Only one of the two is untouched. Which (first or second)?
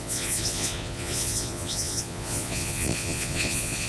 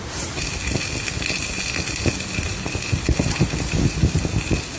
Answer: second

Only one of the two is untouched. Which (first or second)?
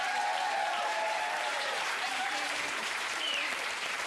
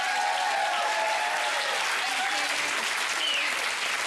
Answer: second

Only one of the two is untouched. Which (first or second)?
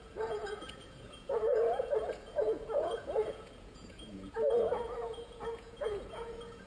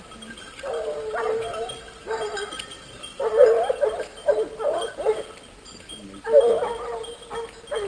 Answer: second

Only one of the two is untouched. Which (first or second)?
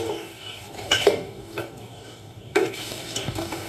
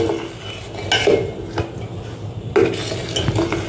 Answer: second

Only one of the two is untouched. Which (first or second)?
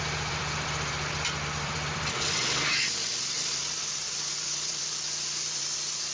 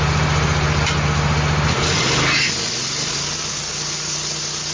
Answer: second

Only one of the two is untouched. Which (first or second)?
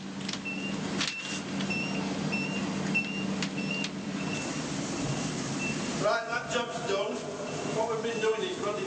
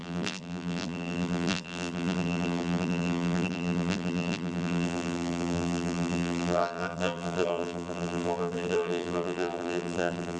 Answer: first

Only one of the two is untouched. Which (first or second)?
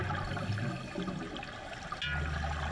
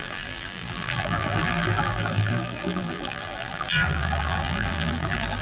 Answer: first